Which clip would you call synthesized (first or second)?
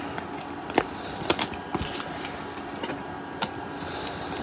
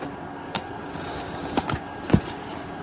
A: second